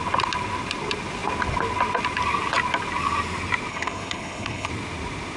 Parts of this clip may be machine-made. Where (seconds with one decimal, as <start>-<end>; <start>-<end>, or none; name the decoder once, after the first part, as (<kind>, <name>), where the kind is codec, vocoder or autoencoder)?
3.7-4.7 (codec, HILCodec)